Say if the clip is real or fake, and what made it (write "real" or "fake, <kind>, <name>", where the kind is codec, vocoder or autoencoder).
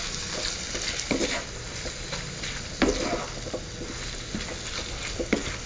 real